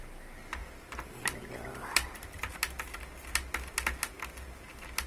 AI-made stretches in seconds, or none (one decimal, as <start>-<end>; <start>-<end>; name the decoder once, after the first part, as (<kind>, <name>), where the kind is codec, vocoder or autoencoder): none